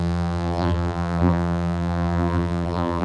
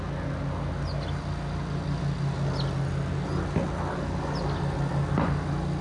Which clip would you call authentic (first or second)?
second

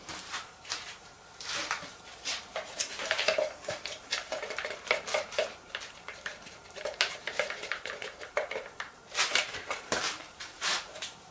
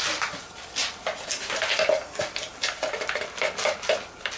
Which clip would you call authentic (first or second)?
second